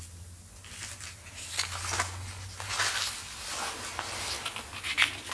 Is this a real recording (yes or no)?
yes